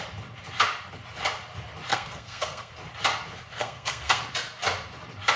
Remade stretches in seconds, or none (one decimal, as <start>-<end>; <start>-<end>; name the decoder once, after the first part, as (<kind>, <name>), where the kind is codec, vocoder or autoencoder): 1.9-2.7 (codec, SNAC); 3.5-4.2